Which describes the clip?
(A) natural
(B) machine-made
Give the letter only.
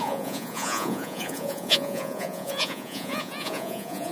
B